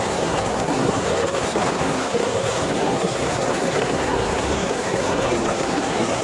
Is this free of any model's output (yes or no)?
no